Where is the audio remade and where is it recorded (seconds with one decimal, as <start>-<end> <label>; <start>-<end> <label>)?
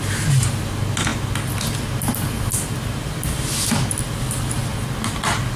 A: 0.0-5.6 recorded